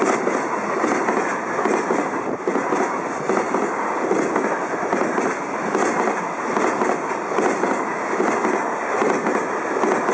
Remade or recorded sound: recorded